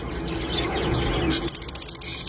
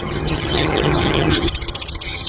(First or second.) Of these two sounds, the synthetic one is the second